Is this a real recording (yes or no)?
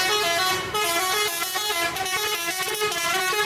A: yes